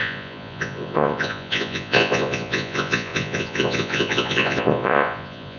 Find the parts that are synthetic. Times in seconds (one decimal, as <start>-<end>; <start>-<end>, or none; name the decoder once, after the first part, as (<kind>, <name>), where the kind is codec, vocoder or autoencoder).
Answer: 0.0-5.6 (vocoder, Vocos)